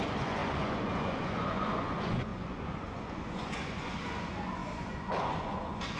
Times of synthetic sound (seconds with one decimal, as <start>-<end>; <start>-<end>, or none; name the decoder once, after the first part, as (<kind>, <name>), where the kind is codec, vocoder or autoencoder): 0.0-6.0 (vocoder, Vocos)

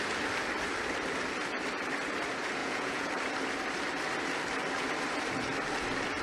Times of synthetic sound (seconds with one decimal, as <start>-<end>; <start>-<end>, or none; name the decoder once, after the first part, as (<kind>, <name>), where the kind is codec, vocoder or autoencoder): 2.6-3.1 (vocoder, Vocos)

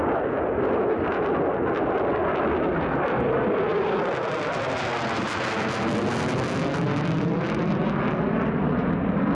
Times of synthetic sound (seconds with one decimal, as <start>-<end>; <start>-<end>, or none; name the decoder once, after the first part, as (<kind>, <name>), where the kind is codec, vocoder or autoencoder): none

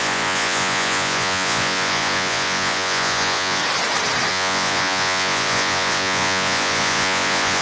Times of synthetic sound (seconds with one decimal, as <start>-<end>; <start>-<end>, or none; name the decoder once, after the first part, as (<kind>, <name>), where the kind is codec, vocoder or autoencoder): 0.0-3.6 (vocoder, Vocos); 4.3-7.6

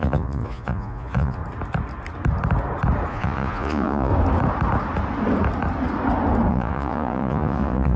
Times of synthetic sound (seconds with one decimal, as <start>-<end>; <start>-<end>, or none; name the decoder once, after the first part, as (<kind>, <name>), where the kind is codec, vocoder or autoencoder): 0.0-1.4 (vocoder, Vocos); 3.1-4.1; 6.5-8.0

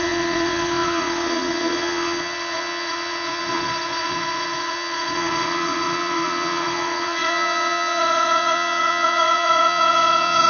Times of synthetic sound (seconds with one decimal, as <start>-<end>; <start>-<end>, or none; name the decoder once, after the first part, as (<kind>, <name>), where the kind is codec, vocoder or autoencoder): 0.0-10.5 (vocoder, Vocos)